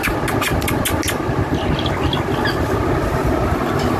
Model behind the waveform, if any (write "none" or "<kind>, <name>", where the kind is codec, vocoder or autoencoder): none